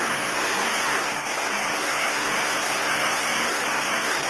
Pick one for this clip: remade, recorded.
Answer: remade